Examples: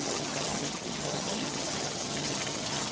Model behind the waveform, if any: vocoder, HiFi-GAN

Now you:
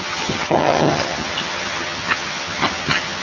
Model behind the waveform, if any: vocoder, HiFi-GAN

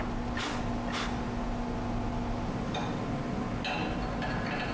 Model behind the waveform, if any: none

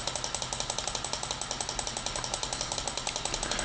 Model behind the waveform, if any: none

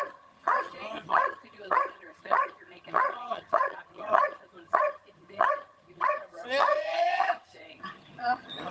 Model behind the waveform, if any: vocoder, HiFi-GAN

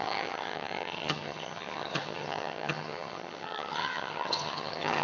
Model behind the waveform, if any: vocoder, HiFi-GAN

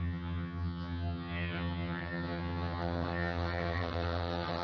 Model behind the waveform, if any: vocoder, HiFi-GAN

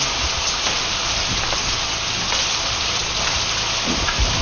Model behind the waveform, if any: none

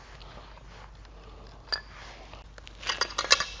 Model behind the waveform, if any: none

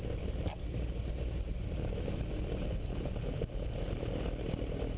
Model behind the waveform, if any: none